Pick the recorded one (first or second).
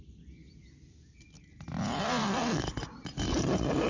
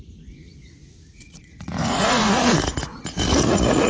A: first